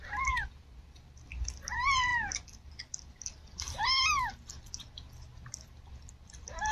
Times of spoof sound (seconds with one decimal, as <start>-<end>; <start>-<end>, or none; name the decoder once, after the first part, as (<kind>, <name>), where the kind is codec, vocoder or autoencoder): none